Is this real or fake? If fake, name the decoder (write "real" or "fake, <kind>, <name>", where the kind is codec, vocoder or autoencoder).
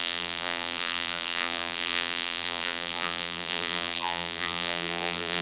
fake, vocoder, BigVGAN v2